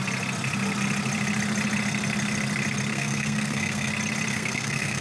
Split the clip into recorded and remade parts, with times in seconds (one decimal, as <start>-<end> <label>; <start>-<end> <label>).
0.0-2.9 recorded; 2.9-3.9 remade; 3.9-4.3 recorded; 4.3-5.0 remade